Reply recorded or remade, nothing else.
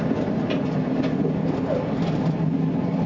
recorded